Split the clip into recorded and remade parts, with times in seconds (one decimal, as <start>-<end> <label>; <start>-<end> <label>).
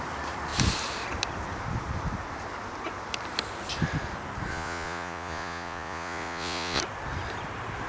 0.0-4.5 recorded; 4.5-6.8 remade; 6.8-7.9 recorded